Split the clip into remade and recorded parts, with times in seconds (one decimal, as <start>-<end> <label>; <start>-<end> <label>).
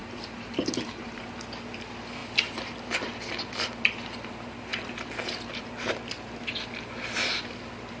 0.0-1.2 remade; 1.2-8.0 recorded